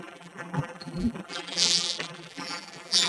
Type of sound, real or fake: fake